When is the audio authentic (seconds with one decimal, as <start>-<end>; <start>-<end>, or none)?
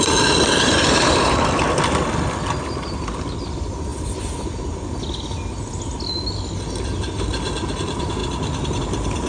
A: 0.0-9.3